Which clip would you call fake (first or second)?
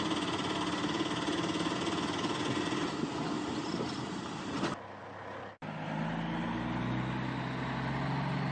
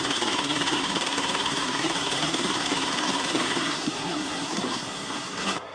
second